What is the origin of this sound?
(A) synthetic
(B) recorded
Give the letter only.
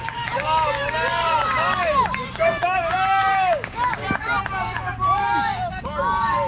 A